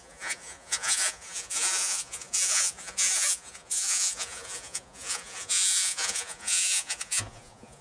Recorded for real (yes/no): no